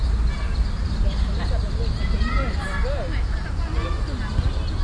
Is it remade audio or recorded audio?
recorded